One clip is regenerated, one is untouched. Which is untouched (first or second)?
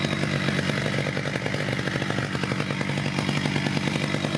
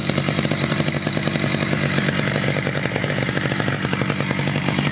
first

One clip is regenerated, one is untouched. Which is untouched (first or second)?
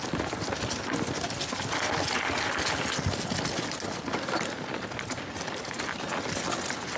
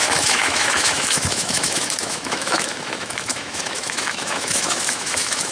first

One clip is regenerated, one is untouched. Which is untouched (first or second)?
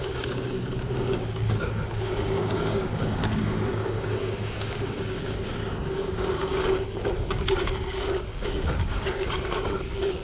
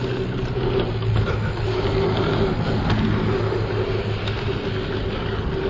second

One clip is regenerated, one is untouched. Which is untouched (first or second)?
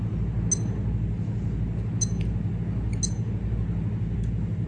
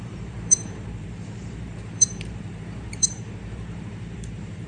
first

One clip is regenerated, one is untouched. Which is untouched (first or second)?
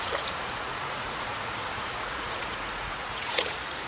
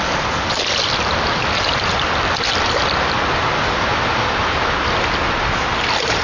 second